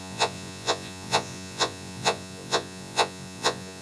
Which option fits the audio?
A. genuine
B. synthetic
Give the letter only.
B